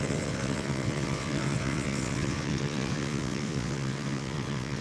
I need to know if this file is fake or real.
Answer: fake